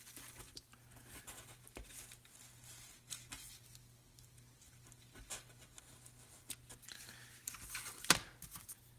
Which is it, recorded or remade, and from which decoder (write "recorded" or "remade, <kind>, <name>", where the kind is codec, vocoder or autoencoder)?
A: recorded